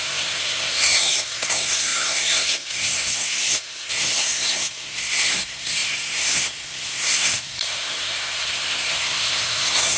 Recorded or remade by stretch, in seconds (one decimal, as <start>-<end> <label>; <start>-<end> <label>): 0.0-10.0 remade